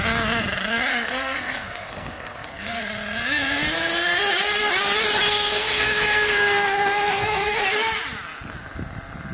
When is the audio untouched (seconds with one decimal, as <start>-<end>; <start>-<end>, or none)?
0.0-0.9; 2.8-5.3; 7.6-9.3